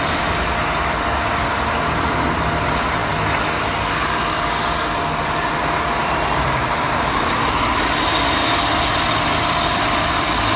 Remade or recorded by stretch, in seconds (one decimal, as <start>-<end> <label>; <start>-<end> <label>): 0.0-6.0 recorded; 6.0-7.2 remade; 7.2-10.6 recorded